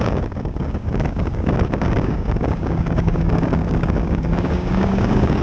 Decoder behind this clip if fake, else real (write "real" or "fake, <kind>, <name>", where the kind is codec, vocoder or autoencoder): fake, codec, DAC